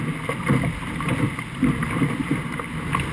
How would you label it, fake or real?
real